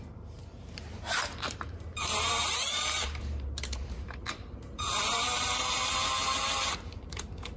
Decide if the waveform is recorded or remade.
remade